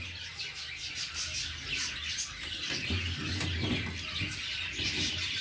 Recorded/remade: recorded